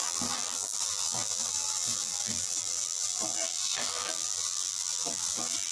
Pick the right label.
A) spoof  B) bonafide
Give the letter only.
A